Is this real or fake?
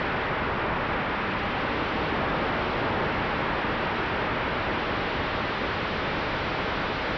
real